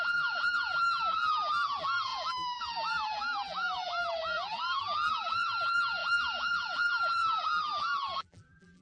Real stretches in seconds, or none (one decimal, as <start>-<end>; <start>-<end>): none